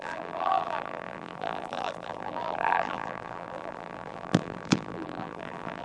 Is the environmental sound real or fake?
fake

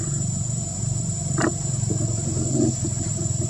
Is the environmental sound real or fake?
real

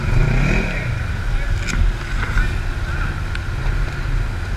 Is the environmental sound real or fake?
real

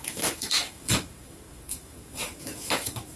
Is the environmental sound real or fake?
fake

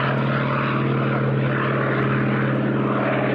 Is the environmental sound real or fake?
real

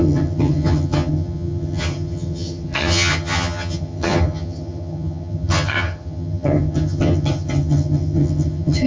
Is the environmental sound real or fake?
fake